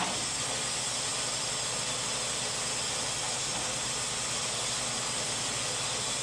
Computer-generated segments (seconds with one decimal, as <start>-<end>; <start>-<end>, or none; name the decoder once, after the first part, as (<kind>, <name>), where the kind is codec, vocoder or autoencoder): none